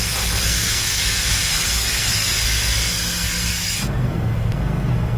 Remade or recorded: remade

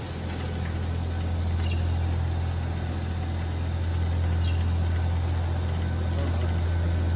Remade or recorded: recorded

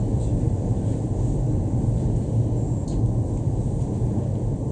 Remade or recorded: recorded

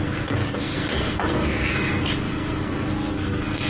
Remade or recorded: remade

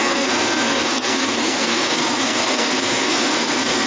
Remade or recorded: remade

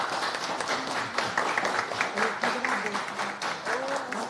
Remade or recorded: recorded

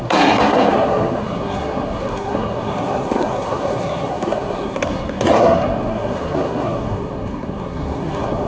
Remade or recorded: remade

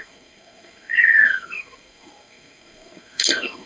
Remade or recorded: remade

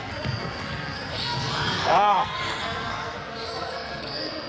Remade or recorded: remade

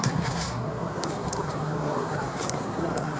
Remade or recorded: remade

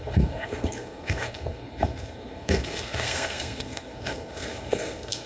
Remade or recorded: remade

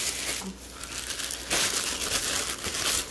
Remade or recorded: recorded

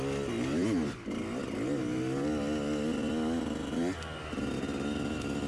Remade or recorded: recorded